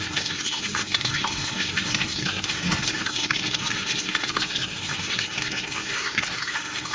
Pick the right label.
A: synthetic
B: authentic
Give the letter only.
A